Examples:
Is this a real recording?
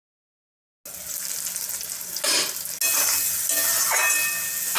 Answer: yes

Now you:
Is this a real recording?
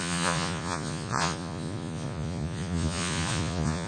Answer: no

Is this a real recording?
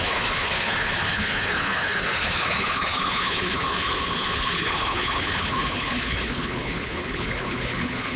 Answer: no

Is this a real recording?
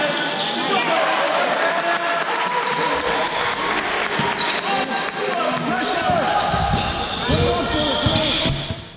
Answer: yes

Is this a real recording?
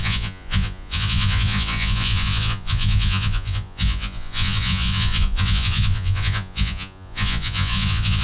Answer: no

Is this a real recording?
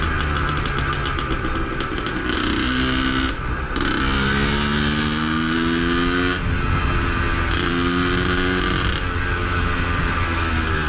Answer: yes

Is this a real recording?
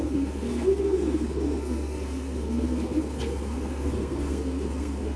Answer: no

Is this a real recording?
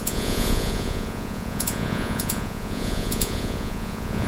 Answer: no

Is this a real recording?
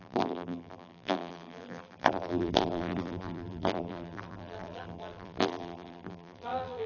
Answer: no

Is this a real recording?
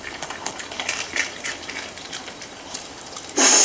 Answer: yes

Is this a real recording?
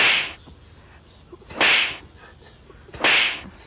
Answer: yes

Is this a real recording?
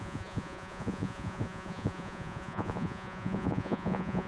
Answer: no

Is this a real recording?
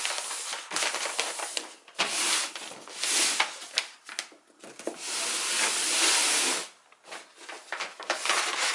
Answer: yes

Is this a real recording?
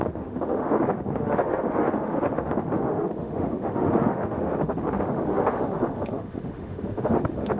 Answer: no